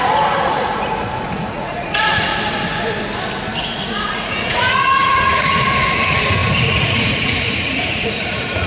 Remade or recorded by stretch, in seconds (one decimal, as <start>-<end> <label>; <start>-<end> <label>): 0.0-2.3 remade; 2.3-3.6 recorded; 3.6-8.7 remade